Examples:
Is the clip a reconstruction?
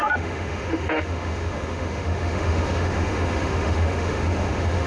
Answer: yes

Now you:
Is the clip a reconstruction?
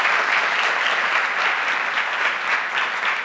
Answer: no